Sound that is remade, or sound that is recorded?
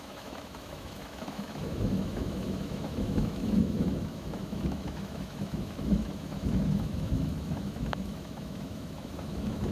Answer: remade